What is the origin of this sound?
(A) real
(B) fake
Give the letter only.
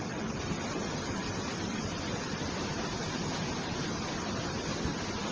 A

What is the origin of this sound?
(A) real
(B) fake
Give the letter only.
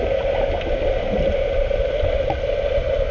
A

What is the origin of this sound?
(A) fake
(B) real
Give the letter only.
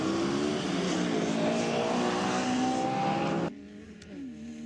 B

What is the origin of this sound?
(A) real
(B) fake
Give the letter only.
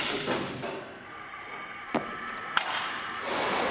A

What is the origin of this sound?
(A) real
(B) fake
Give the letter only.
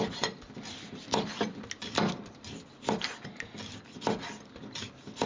A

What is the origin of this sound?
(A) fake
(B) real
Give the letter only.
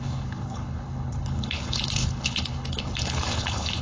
A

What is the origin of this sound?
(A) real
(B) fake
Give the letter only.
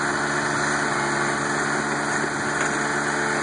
A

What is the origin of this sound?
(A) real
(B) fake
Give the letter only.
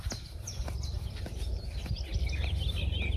A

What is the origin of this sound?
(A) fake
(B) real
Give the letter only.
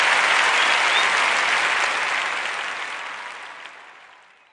B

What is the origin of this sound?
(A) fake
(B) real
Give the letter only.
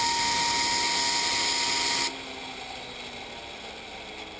B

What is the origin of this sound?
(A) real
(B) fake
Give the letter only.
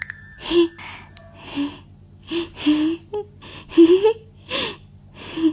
A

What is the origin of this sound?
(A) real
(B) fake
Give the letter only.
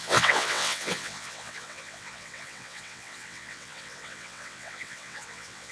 B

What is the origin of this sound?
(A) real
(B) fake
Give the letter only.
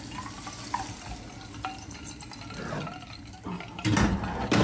A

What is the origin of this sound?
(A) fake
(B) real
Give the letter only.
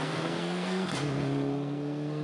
A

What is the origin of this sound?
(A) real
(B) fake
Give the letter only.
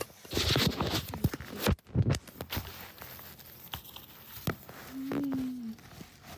A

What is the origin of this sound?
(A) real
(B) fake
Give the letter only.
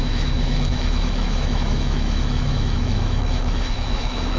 B